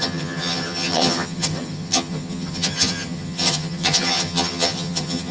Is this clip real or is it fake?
fake